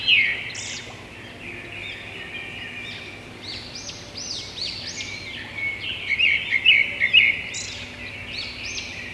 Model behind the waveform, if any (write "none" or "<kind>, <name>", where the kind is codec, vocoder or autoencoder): none